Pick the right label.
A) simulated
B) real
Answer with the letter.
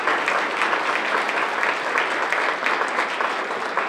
B